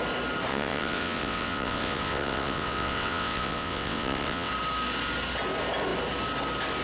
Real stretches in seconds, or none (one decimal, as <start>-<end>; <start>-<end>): 0.0-0.5; 4.5-6.8